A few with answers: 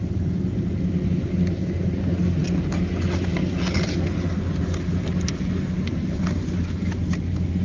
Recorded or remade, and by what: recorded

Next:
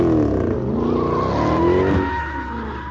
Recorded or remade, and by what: recorded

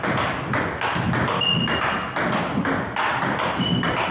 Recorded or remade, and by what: recorded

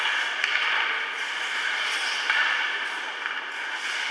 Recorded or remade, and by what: remade, vocoder, BigVGAN v2